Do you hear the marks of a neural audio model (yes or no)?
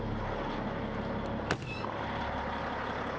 no